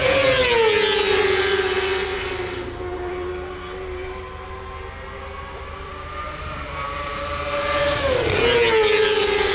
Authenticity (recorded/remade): recorded